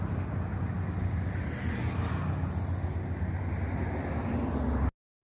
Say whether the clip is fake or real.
real